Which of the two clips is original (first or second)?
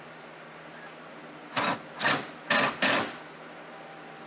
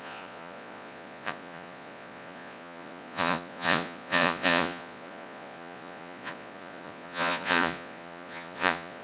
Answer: first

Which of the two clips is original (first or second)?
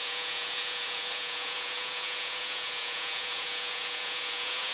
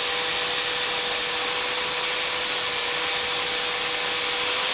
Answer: second